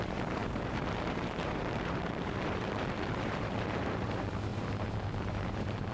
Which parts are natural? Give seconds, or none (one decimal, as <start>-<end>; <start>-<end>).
none